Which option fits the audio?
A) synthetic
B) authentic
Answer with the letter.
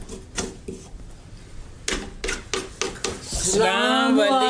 B